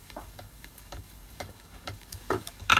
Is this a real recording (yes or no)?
no